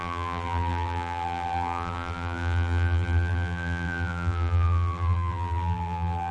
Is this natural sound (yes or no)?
no